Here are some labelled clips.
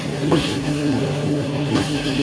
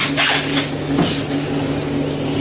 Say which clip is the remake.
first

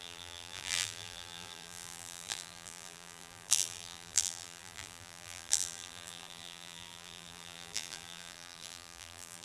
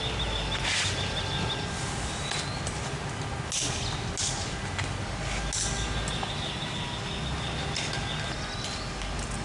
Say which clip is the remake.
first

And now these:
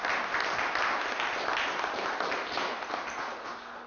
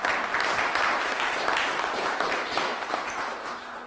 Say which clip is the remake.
second